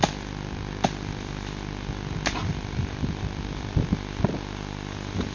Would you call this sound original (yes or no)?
yes